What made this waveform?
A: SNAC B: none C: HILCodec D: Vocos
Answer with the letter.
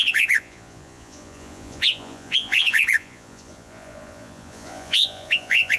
D